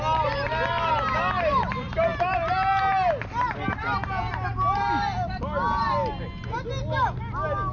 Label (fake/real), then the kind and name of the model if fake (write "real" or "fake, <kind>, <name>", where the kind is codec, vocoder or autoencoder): real